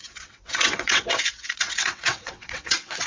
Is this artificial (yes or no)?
yes